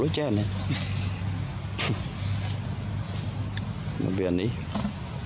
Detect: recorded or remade recorded